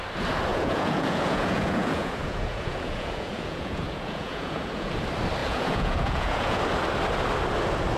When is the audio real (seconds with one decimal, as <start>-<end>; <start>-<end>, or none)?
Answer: 0.0-0.5; 4.9-5.4; 6.6-8.0